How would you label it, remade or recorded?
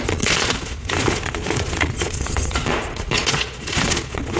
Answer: remade